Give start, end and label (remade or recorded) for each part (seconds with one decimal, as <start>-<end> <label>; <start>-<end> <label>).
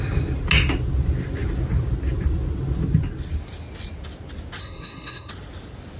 0.0-4.6 recorded; 4.6-5.3 remade; 5.3-6.0 recorded